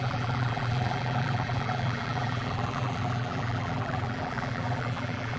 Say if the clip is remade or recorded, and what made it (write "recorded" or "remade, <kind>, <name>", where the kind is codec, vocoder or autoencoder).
remade, vocoder, BigVGAN v2